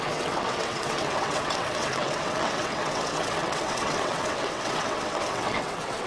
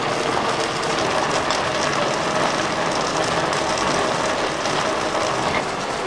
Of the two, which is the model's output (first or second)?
first